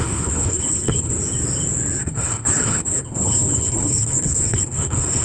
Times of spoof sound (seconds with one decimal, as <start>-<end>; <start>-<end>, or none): 0.0-1.1; 2.0-5.2